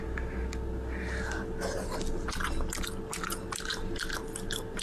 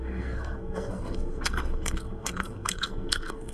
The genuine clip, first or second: first